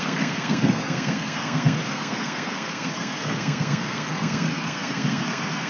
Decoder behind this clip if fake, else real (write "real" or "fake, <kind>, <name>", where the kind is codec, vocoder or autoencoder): fake, codec, SNAC